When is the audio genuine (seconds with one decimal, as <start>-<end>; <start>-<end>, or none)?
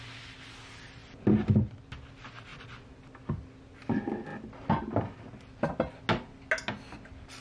0.0-7.4